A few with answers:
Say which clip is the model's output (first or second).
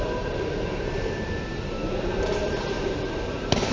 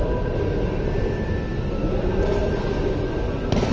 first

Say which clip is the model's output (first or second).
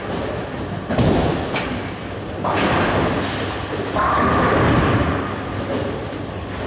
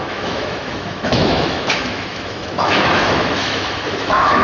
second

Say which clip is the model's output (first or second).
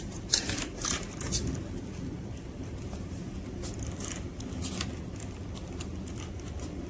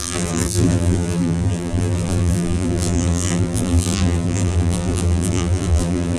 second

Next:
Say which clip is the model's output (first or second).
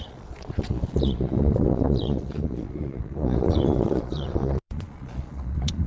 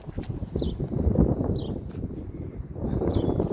first